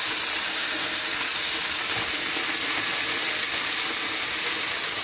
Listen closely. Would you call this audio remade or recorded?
recorded